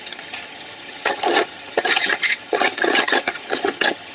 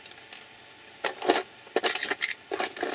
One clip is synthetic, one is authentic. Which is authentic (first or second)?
second